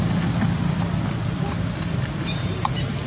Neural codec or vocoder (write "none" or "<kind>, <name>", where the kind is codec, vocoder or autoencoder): none